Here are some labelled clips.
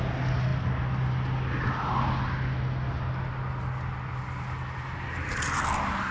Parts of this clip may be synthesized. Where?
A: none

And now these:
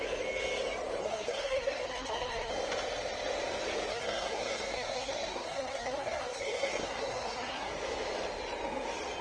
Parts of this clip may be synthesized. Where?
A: 1.0-2.5 (codec, SNAC); 3.9-7.7

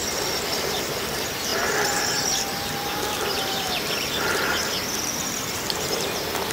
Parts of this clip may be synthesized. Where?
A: 0.5-6.5 (vocoder, BigVGAN v2)

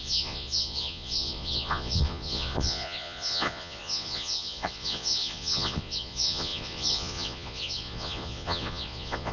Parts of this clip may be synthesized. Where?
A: 0.0-9.3 (vocoder, Vocos)

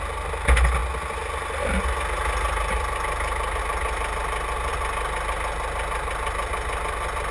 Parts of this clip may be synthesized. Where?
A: none